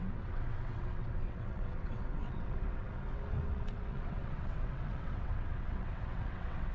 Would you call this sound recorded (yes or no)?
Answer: no